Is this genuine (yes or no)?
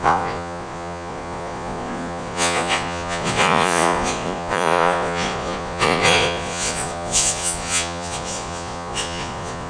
no